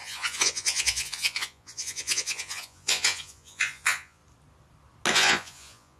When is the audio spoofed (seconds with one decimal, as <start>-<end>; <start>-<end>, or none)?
0.0-4.2; 5.1-6.0